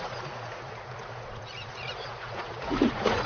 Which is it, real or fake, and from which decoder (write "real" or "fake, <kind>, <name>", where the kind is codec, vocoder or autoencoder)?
fake, vocoder, Vocos